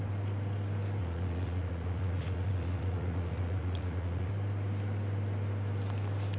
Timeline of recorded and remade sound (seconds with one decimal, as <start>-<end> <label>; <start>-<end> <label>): 0.0-1.0 recorded; 1.0-4.3 remade; 4.3-6.4 recorded